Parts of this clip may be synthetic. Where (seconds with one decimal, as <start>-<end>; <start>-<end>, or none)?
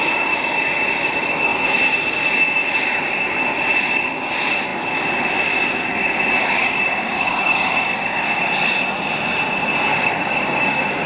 6.4-8.4; 9.9-11.1